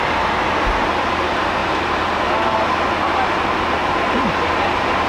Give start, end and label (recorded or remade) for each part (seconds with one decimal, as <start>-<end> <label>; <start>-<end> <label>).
0.0-1.6 recorded; 1.6-2.2 remade; 2.2-3.8 recorded; 3.8-5.1 remade